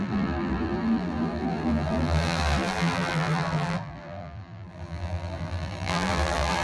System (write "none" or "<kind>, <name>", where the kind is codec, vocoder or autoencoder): vocoder, BigVGAN v2